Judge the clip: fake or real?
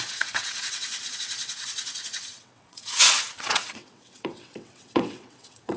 fake